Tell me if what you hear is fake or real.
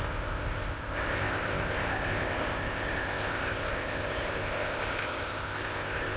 fake